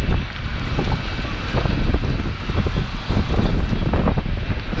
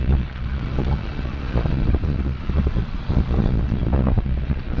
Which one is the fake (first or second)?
second